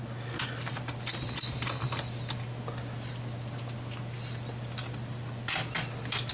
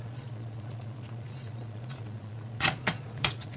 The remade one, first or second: second